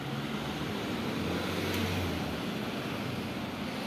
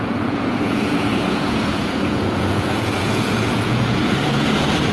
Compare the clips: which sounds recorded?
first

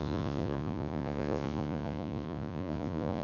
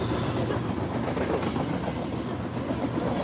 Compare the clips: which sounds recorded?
second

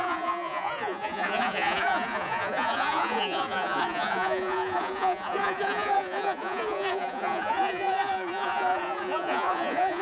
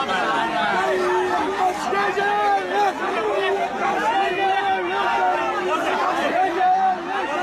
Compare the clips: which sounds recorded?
second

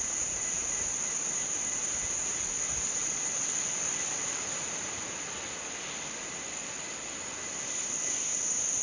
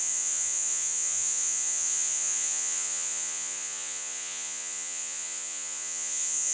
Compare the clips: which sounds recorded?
first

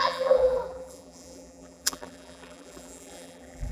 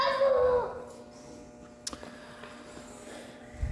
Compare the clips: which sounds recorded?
second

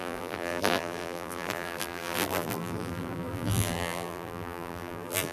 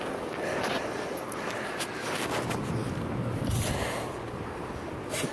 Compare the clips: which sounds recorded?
second